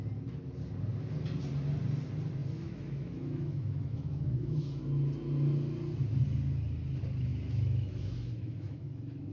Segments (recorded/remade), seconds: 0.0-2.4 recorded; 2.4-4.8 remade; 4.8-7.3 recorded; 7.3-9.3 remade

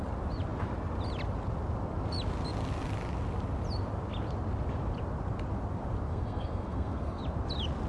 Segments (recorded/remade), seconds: 0.0-6.1 recorded; 6.1-7.2 remade; 7.2-7.9 recorded

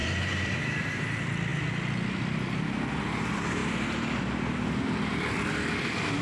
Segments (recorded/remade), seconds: 0.0-0.5 remade; 0.5-6.2 recorded

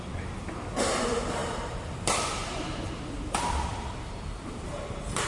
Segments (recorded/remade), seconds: 0.0-1.4 recorded; 1.4-3.3 remade; 3.3-3.7 recorded; 3.7-5.3 remade

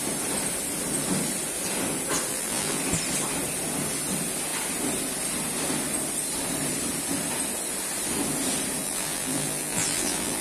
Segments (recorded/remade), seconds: 0.0-2.3 recorded; 2.3-2.8 remade; 2.8-8.8 recorded; 8.8-10.4 remade

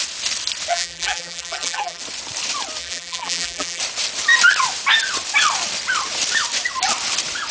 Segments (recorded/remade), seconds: 0.0-0.7 recorded; 0.7-2.0 remade; 2.0-2.8 recorded; 2.8-3.8 remade; 3.8-7.5 recorded